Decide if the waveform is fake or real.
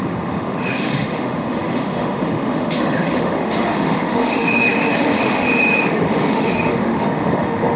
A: fake